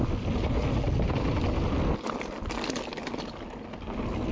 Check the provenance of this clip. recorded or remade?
recorded